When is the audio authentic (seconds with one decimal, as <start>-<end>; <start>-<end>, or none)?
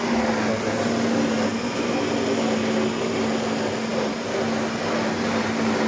0.0-5.9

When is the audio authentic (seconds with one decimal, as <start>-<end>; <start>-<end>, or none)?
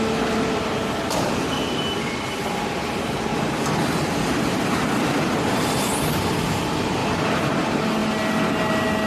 0.0-7.0; 7.5-9.1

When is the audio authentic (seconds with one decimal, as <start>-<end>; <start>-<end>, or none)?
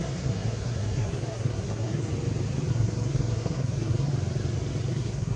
2.1-2.7; 4.1-4.9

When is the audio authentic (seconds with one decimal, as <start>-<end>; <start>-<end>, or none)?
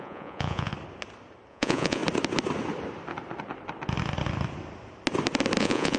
0.7-1.5; 2.0-5.6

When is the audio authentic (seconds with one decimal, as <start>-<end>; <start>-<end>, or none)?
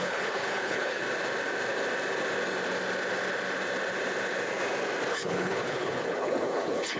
1.0-5.1